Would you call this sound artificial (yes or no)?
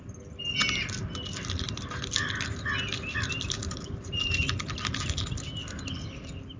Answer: no